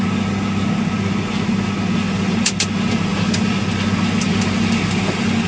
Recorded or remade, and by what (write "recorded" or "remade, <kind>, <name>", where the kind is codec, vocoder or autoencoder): recorded